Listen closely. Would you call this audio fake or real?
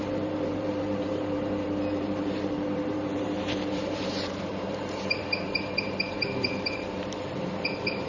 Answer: fake